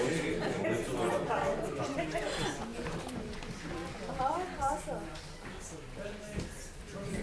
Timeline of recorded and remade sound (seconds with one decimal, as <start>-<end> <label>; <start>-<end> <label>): 0.0-2.7 recorded; 2.7-3.4 remade; 3.4-3.8 recorded; 3.8-4.8 remade; 4.8-7.2 recorded